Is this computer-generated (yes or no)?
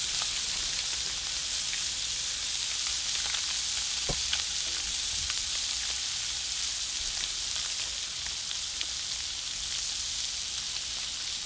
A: no